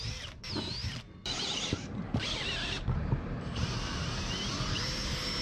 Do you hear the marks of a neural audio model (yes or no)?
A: yes